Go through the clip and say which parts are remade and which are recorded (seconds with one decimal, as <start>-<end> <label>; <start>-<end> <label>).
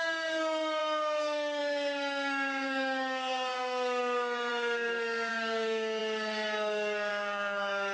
0.0-7.9 remade